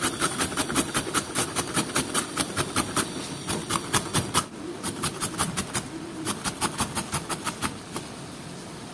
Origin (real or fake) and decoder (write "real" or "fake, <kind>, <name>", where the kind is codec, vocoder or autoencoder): real